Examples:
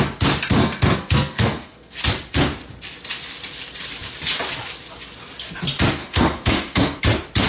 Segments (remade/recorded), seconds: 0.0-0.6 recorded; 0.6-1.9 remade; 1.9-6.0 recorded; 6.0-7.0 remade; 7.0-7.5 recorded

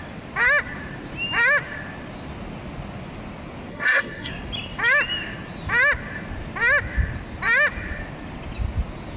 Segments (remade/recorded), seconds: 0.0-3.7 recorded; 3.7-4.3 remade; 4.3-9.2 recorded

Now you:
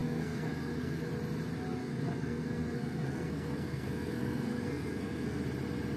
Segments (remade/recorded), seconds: 0.0-1.1 remade; 1.1-1.8 recorded; 1.8-5.4 remade; 5.4-6.0 recorded